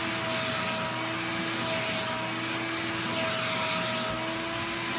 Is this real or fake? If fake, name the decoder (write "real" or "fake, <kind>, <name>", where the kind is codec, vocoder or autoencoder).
real